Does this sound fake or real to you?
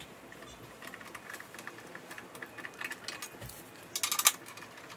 real